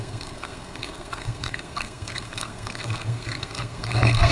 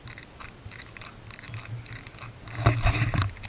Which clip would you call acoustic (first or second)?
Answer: second